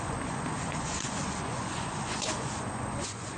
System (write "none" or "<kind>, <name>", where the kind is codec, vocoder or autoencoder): vocoder, Vocos